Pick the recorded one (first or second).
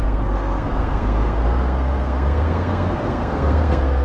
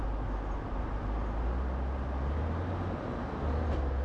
second